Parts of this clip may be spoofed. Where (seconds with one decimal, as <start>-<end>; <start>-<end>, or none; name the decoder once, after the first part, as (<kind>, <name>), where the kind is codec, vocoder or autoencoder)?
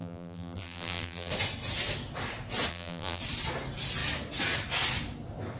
0.0-1.3 (vocoder, BigVGAN v2); 2.7-3.2